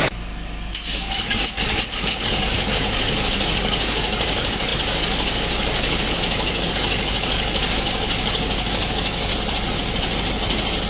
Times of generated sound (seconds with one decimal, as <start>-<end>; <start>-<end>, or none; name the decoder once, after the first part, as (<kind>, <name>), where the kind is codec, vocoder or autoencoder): 0.0-9.3 (codec, DAC)